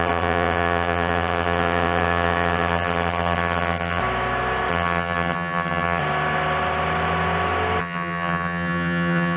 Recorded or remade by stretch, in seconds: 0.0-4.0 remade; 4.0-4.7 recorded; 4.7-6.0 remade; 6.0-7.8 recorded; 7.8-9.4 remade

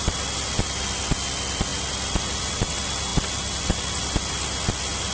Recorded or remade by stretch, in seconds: 0.0-5.1 recorded

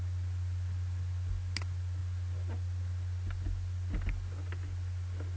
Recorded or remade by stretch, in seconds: 0.0-5.4 recorded